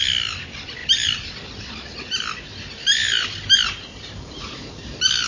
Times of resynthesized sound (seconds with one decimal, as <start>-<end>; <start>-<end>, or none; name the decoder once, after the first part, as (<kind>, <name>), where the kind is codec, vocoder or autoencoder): none